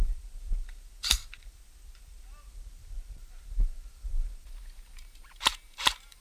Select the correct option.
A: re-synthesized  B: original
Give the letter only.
A